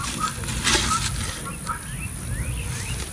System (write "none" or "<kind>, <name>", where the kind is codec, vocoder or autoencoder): none